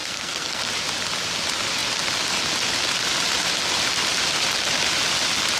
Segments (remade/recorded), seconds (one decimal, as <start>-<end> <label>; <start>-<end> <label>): 0.0-0.6 remade; 0.6-5.6 recorded

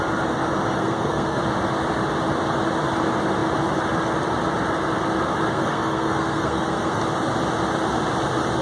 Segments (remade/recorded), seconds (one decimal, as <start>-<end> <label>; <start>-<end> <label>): 0.0-0.8 recorded; 0.8-1.4 remade; 1.4-5.5 recorded; 5.5-7.0 remade; 7.0-8.6 recorded

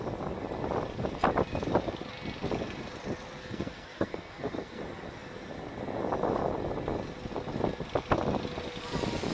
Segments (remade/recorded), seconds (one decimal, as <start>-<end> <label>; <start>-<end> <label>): 0.0-3.4 recorded; 3.4-4.8 remade; 4.8-9.3 recorded

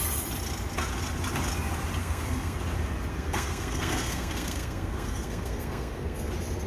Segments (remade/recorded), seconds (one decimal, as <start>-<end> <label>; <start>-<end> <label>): 0.0-2.0 recorded; 2.0-2.6 remade; 2.6-3.1 recorded; 3.1-6.3 remade; 6.3-6.7 recorded

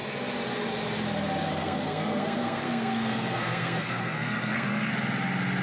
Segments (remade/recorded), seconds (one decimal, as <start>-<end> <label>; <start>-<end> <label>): 0.0-1.5 recorded; 1.5-4.9 remade; 4.9-5.6 recorded

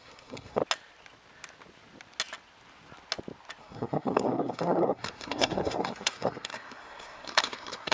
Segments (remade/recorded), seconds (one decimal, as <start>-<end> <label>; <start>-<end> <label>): 0.0-0.6 remade; 0.6-3.6 recorded; 3.6-7.9 remade

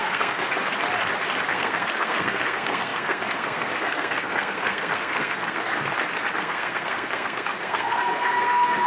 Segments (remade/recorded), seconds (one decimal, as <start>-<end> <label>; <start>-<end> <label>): 0.0-0.4 remade; 0.4-1.5 recorded; 1.5-5.7 remade; 5.7-6.3 recorded; 6.3-8.9 remade